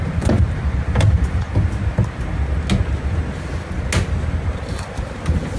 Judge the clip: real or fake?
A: real